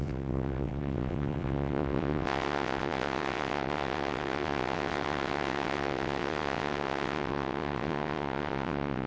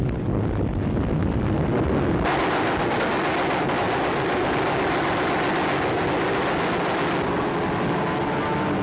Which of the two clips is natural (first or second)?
second